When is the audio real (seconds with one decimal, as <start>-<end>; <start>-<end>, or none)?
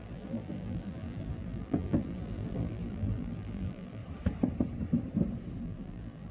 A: 4.0-5.6